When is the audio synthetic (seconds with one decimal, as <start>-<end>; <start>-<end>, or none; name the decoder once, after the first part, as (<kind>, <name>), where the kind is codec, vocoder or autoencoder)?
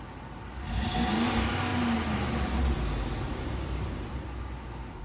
1.7-5.0 (vocoder, BigVGAN v2)